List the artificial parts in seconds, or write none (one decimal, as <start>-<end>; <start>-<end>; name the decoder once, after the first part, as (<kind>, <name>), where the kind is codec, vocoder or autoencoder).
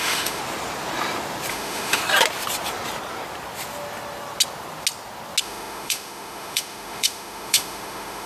0.0-0.4 (autoencoder, DAC-VAE); 1.5-2.0; 5.4-8.3